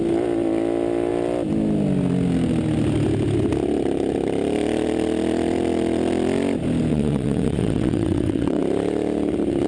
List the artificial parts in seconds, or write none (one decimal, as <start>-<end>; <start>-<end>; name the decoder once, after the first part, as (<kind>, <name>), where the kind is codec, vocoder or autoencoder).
6.9-8.6 (vocoder, WaveNeXt)